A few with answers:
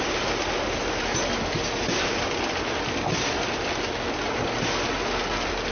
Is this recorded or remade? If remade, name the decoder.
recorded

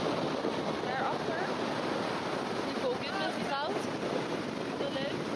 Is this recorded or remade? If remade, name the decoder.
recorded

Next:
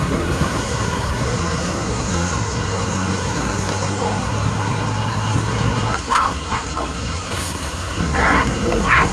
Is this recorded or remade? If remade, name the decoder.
remade, codec, SNAC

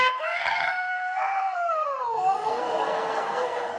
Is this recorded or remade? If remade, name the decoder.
remade, codec, SNAC